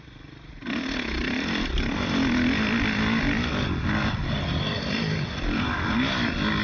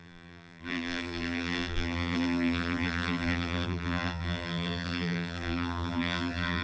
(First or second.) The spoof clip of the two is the second